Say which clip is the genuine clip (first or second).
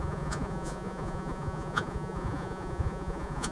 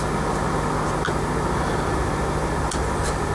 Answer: second